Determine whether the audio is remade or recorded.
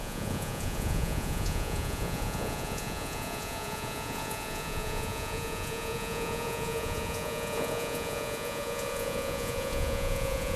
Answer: remade